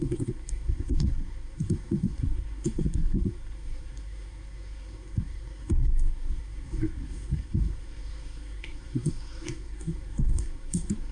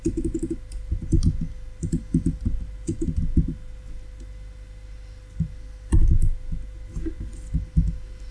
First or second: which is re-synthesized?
first